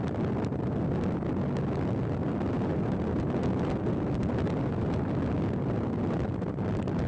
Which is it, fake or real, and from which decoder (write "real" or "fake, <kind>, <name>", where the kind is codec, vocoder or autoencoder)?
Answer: real